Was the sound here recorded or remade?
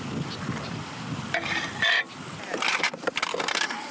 remade